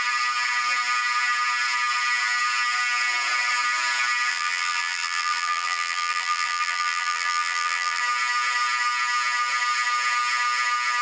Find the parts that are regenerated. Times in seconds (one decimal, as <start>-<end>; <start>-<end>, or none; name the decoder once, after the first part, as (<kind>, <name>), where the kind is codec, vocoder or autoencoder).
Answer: 4.3-8.0 (vocoder, BigVGAN v2)